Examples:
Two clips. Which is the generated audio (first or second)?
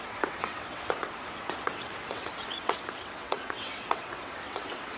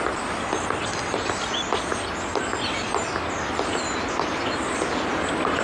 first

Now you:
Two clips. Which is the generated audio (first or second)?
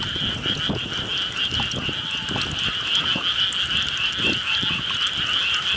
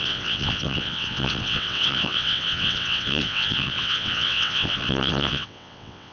second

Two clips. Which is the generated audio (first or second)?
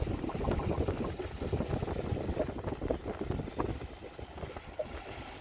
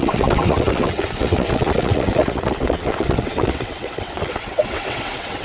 second